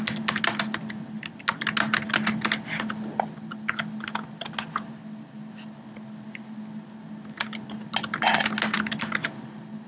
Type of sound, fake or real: real